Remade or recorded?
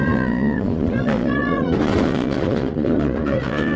remade